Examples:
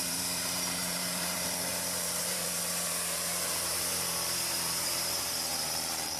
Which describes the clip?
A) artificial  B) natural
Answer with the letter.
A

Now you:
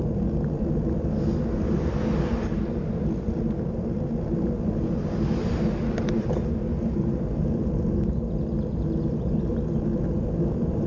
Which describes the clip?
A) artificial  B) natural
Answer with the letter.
B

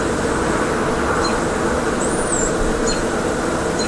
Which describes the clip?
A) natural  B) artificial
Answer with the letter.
A